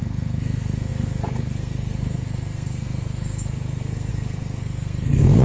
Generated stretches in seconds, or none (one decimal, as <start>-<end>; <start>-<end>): 0.0-5.4